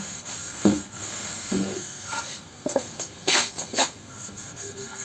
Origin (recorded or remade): remade